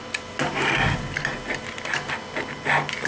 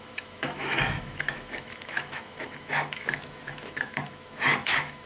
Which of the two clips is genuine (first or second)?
first